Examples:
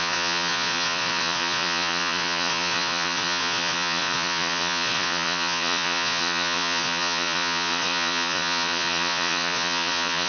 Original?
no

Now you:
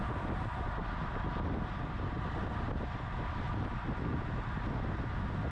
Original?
yes